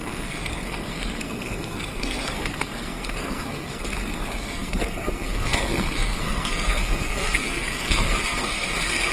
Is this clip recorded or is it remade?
remade